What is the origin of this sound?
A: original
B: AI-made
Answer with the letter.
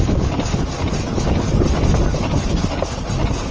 A